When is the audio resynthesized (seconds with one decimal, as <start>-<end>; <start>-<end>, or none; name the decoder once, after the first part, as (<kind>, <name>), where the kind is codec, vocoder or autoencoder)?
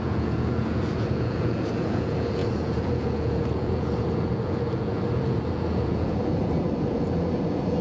0.0-7.8 (vocoder, Vocos)